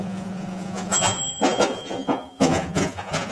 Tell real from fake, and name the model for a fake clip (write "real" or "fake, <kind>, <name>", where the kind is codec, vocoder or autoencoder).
fake, vocoder, Vocos